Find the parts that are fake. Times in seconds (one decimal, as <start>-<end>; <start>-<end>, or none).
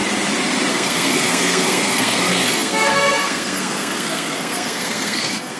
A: 0.7-5.6